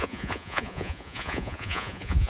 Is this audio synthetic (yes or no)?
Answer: yes